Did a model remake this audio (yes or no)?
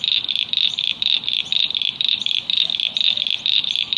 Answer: yes